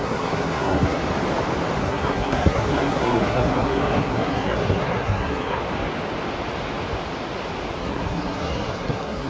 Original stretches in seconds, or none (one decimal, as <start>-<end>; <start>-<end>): 1.0-1.8; 5.6-7.8